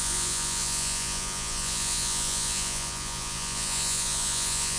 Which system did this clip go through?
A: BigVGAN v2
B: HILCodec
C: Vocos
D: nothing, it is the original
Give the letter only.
C